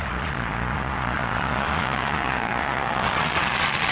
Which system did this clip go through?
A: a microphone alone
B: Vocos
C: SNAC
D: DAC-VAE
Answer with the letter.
B